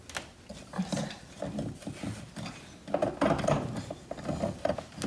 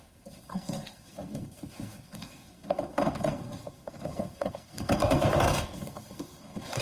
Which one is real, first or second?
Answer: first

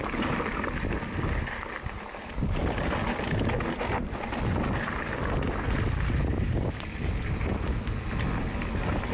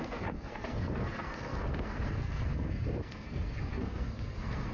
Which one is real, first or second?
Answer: first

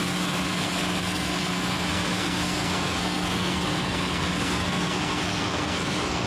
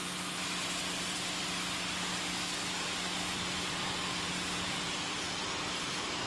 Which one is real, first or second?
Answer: second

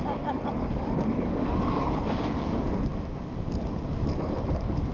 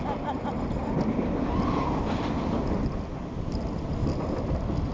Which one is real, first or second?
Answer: second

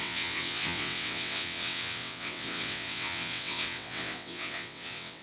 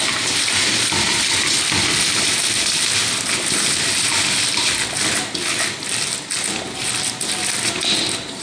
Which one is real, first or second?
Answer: second